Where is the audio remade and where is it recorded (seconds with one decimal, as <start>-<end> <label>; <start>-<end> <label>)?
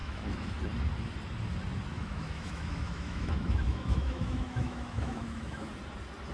0.0-0.6 remade; 0.6-1.9 recorded; 1.9-5.7 remade; 5.7-6.3 recorded